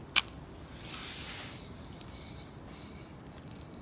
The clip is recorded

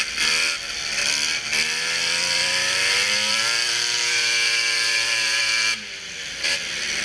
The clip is remade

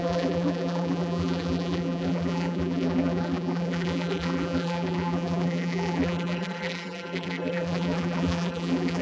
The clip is remade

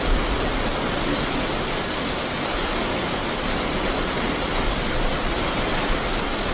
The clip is recorded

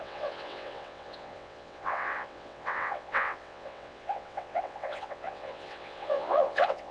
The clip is remade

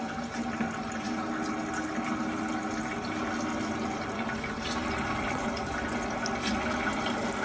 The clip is recorded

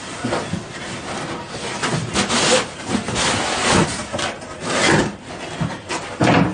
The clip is recorded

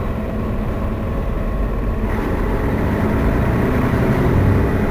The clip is remade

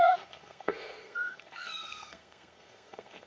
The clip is remade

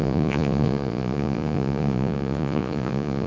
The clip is remade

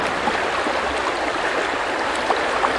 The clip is recorded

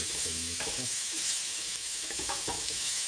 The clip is remade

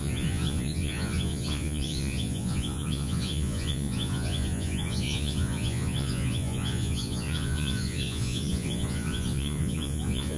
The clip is remade